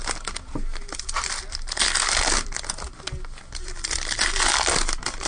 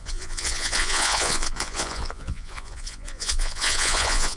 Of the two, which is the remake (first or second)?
second